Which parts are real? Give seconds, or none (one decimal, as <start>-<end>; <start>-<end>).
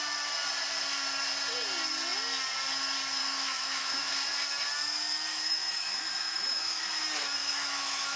0.0-3.2; 4.1-5.3; 7.0-7.4